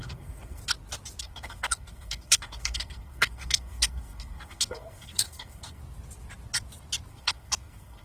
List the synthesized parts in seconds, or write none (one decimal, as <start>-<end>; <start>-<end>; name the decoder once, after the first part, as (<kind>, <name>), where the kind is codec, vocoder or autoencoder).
0.0-0.6 (codec, SNAC); 1.2-5.8; 7.1-8.0